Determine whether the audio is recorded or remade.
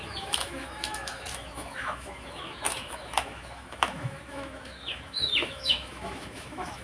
remade